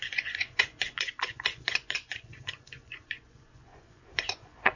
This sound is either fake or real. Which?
fake